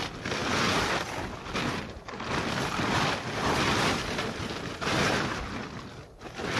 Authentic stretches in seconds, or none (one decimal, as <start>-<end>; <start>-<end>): 0.0-6.6